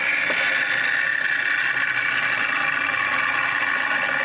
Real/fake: real